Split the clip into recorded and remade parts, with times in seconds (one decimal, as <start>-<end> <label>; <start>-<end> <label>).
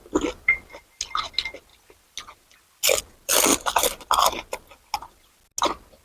0.0-0.8 remade; 0.8-3.5 recorded; 3.5-4.0 remade; 4.0-6.0 recorded